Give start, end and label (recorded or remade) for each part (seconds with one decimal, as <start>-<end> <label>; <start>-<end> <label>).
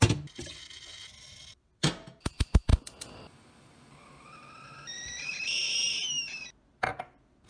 0.0-7.5 recorded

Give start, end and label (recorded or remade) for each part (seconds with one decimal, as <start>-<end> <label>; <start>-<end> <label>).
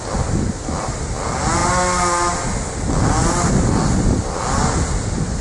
0.0-5.4 recorded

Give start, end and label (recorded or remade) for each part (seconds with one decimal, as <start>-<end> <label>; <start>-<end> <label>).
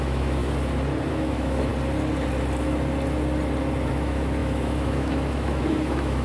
0.0-0.4 remade; 0.4-1.1 recorded; 1.1-1.7 remade; 1.7-3.9 recorded; 3.9-6.2 remade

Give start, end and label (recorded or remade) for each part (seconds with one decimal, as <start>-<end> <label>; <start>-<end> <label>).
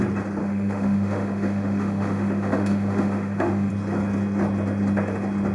0.0-0.4 recorded; 0.4-3.7 remade; 3.7-5.5 recorded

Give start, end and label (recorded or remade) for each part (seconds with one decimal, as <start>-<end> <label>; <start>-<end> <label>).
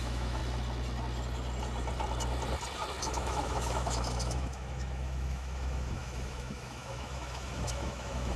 0.0-0.4 remade; 0.4-3.0 recorded; 3.0-8.4 remade